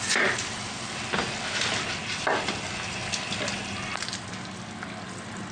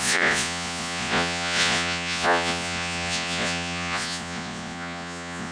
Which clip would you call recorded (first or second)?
first